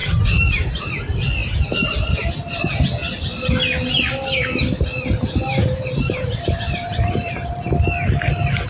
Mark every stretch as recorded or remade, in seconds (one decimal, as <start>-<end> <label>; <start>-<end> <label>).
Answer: 0.0-0.8 remade; 0.8-5.6 recorded; 5.6-7.5 remade; 7.5-8.7 recorded